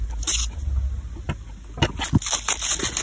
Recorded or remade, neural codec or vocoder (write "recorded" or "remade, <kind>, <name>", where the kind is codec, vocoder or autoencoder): recorded